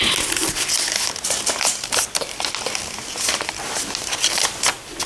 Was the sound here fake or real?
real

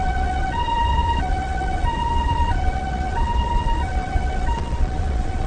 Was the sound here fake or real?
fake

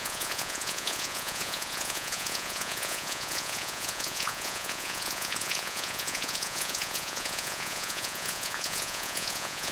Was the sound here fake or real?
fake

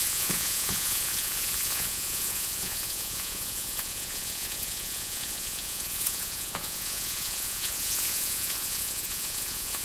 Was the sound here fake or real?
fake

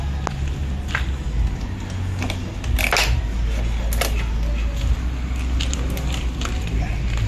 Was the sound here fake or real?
real